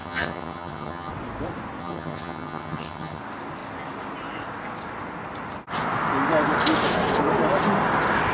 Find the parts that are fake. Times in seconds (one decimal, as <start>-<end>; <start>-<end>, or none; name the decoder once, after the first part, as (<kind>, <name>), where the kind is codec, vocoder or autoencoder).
0.0-1.1 (vocoder, HiFi-GAN); 1.8-3.2

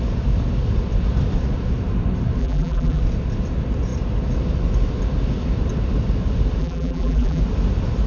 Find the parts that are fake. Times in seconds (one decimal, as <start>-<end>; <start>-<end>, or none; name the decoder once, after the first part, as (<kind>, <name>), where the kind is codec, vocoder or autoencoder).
2.4-3.0 (vocoder, BigVGAN v2); 6.6-7.4

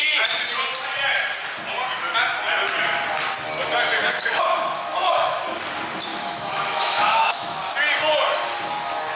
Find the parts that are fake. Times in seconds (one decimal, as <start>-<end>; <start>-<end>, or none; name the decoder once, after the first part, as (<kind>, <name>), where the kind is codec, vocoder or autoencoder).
4.0-5.4 (autoencoder, DAC-VAE); 6.1-7.6

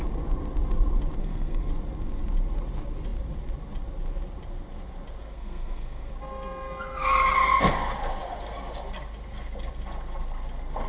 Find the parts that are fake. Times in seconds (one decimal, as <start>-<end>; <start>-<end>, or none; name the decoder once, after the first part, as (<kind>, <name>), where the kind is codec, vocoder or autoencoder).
1.2-1.7 (codec, SNAC); 5.2-6.1

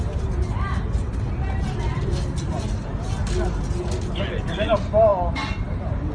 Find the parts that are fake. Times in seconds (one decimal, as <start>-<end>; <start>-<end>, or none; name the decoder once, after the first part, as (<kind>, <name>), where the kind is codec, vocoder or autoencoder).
none

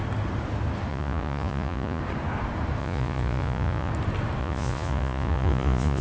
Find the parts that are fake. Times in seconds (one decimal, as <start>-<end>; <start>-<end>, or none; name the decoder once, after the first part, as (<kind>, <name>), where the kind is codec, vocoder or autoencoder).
0.9-2.0 (vocoder, Vocos); 2.8-3.9; 4.4-6.0

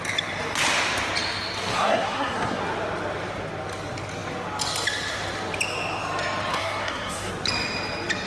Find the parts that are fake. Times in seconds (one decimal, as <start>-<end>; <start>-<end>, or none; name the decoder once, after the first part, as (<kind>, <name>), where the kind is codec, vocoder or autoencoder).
1.7-2.6 (codec, SNAC); 6.5-7.3

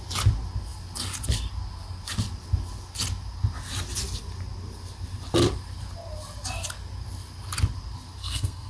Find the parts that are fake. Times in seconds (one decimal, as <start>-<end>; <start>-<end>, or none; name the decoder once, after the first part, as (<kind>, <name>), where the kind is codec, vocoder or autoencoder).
8.2-8.7 (codec, SNAC)